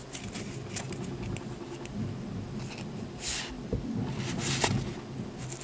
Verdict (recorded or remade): recorded